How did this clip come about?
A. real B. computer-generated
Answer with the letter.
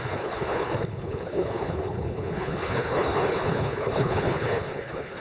B